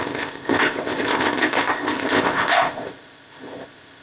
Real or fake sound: fake